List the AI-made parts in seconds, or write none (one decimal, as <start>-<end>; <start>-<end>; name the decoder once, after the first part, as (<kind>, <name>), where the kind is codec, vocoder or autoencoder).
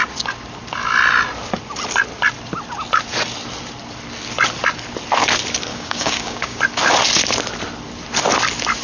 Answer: 5.7-6.6 (codec, DAC)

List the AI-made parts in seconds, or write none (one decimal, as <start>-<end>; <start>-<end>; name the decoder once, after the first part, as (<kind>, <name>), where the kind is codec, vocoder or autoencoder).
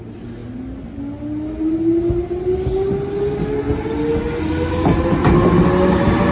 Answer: none